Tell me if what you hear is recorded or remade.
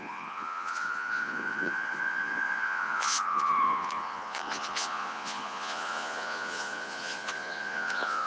remade